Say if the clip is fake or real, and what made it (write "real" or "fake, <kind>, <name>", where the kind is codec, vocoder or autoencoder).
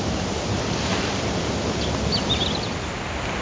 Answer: real